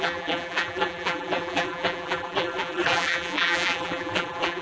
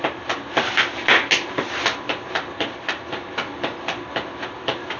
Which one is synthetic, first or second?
first